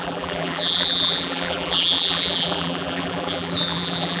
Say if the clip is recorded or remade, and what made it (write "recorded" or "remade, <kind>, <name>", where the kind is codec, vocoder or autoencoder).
remade, vocoder, BigVGAN v2